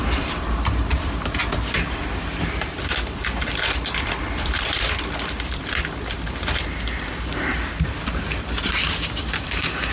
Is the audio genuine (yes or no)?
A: no